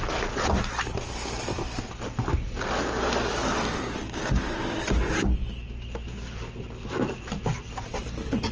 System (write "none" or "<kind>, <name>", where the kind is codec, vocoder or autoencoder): none